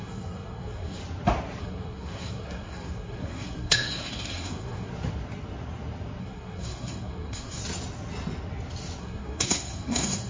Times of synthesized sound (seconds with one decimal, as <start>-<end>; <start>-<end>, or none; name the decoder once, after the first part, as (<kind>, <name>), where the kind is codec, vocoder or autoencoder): 0.0-1.0 (codec, SNAC); 1.6-4.9; 6.2-7.6; 9.0-10.3